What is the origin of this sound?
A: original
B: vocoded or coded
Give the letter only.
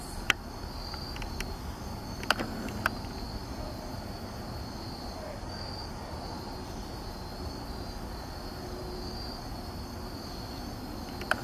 A